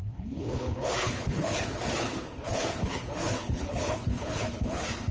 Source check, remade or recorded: remade